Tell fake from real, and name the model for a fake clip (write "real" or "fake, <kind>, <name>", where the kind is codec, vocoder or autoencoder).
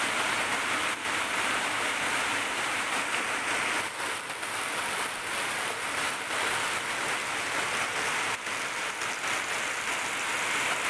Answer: real